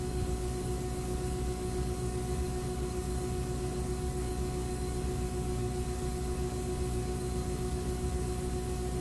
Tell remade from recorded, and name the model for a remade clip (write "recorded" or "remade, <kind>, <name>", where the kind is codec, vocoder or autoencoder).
remade, codec, DAC